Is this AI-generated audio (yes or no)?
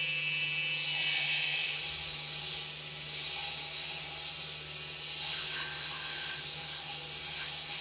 no